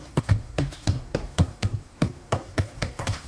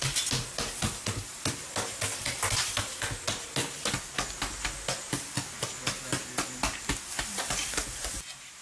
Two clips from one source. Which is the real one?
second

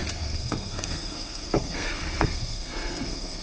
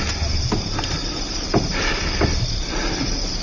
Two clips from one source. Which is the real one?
second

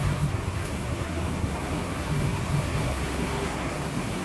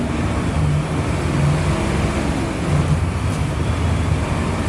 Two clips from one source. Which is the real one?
second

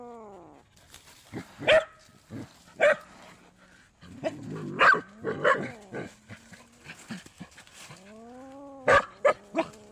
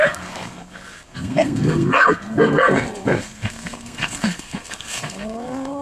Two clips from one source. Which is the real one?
first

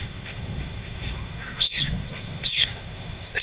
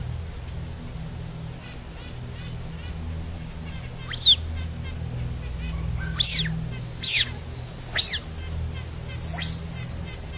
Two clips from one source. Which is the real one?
second